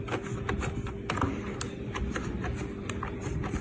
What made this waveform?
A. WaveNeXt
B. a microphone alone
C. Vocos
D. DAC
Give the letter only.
B